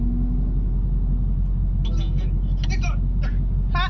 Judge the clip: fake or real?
real